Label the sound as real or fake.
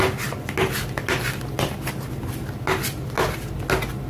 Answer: real